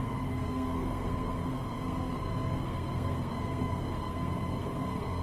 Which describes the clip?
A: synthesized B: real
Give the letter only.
A